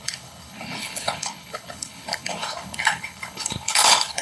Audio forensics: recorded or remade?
remade